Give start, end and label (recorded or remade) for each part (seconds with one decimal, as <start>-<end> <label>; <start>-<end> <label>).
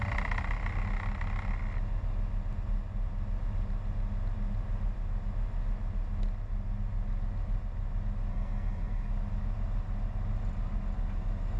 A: 0.0-8.3 recorded; 8.3-9.1 remade; 9.1-11.6 recorded